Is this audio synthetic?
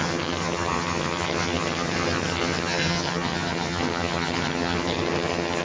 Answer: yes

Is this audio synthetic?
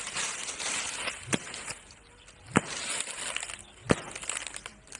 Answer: no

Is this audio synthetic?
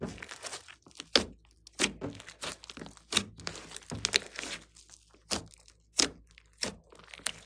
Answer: no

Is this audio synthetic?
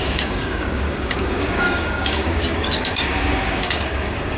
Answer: yes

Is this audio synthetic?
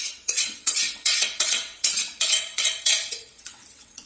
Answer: yes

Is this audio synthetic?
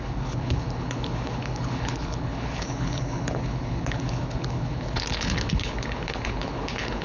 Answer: yes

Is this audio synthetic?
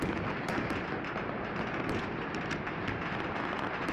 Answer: no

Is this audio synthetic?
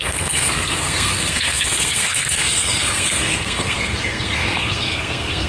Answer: yes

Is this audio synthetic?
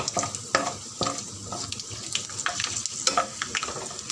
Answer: no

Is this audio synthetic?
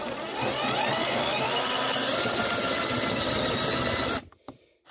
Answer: no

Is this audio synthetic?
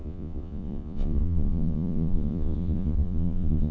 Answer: yes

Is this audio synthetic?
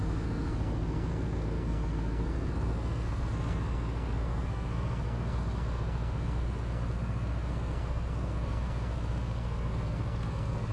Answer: yes